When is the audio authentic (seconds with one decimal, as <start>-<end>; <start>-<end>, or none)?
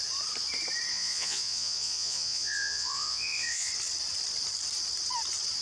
0.0-0.9; 3.7-5.6